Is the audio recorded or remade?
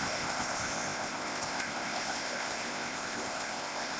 remade